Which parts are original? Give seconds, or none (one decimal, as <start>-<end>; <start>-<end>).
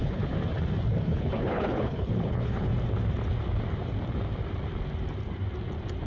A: 0.4-1.0; 2.7-6.1